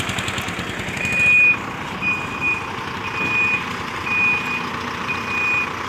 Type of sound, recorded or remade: recorded